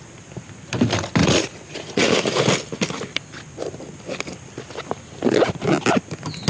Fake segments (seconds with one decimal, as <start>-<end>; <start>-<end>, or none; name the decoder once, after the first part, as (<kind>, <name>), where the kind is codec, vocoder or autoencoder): 1.2-2.4 (vocoder, Vocos)